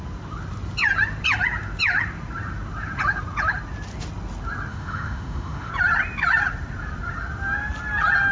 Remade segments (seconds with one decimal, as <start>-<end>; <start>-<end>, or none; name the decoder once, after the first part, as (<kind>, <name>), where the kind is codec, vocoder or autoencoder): 4.7-5.7 (autoencoder, DAC-VAE)